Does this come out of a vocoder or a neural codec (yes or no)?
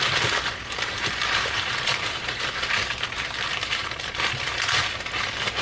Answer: yes